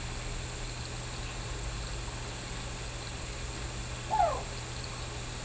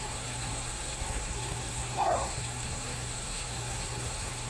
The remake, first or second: second